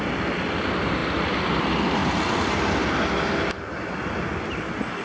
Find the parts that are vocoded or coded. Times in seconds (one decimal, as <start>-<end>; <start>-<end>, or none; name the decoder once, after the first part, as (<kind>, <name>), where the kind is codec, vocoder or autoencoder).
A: none

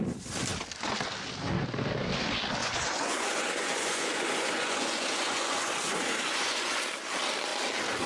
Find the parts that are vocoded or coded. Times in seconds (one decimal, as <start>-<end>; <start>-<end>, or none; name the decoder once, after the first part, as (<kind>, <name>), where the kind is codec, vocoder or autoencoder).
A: 2.6-6.8 (vocoder, Vocos)

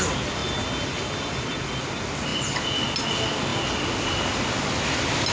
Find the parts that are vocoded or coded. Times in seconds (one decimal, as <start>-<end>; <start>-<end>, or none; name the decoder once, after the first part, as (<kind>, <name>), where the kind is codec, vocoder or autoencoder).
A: 0.4-1.5 (vocoder, BigVGAN v2)

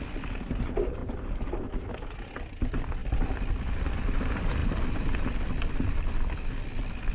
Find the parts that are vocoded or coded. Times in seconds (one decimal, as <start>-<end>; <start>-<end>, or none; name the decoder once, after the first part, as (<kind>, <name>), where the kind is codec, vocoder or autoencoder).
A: none